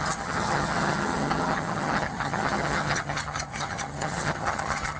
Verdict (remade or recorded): remade